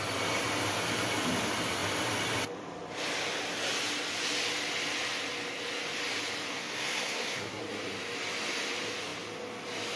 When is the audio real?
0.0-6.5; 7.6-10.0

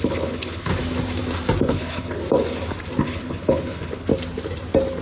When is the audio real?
0.7-1.6; 2.2-3.0; 4.1-5.0

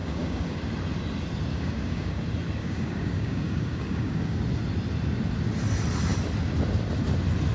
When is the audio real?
0.6-1.5; 2.2-2.6; 4.4-7.5

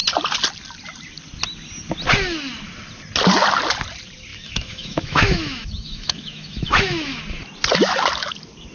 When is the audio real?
0.0-4.3; 7.2-8.7